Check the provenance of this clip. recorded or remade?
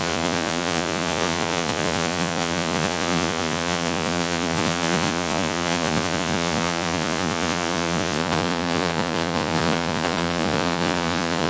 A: remade